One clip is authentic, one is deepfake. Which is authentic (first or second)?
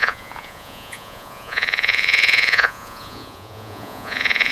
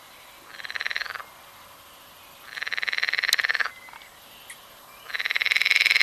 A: second